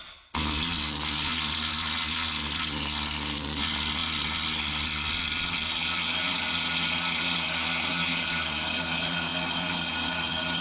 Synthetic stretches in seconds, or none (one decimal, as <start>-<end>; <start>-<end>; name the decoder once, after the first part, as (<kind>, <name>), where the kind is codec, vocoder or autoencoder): none